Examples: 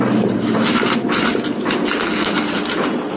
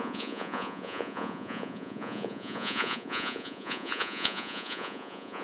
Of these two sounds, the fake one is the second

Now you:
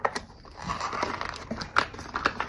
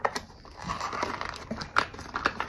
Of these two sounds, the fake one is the second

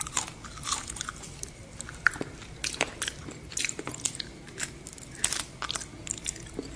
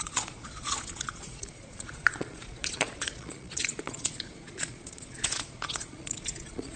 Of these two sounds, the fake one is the second